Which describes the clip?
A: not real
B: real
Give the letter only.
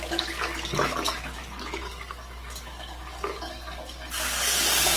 A